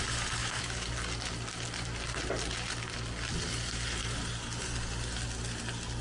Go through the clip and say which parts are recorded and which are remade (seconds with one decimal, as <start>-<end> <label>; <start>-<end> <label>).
0.0-0.4 recorded; 0.4-0.9 remade; 0.9-6.0 recorded